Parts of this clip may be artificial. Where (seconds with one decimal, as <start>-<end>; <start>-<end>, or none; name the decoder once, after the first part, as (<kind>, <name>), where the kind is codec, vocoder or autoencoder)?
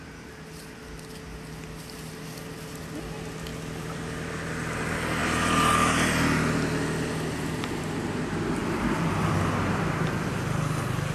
3.5-4.3 (vocoder, BigVGAN v2); 8.6-10.4